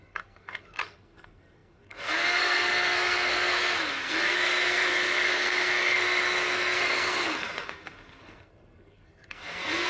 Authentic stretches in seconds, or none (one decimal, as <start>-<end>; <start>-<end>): none